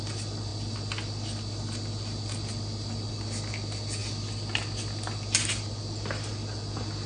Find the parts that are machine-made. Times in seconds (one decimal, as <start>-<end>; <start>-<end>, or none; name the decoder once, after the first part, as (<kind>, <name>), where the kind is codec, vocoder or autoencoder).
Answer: none